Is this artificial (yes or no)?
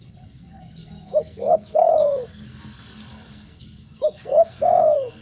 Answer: yes